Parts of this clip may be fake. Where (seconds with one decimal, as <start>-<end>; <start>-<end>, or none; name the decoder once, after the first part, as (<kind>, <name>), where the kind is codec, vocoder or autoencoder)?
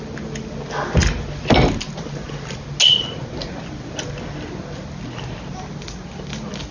none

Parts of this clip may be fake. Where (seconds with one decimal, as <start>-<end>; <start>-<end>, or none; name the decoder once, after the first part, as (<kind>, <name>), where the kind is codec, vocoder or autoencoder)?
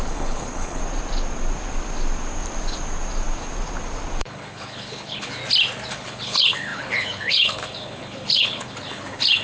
0.0-0.8 (codec, HILCodec); 4.2-5.4; 5.9-9.4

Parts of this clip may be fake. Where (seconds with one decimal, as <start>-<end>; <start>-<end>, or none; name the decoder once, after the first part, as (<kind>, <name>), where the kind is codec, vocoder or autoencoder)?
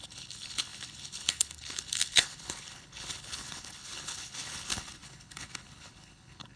0.0-6.6 (codec, HILCodec)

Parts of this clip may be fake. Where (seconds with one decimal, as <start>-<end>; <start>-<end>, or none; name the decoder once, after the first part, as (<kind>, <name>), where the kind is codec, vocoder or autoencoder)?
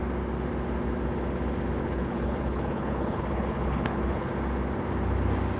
1.8-4.3 (codec, HILCodec)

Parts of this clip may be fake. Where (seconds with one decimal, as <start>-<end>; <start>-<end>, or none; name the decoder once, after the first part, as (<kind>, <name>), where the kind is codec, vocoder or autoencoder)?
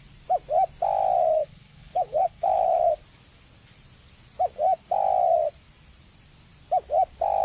1.3-2.8 (codec, HILCodec)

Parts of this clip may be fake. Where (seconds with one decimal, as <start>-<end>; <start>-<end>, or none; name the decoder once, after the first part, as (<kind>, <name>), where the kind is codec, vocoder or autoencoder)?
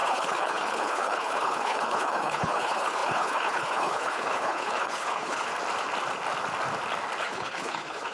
0.0-5.5 (codec, HILCodec); 7.2-8.1